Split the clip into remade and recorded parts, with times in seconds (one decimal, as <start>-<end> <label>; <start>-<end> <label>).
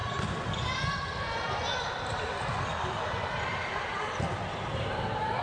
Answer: 0.0-5.4 recorded